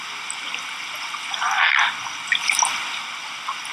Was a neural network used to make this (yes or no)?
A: no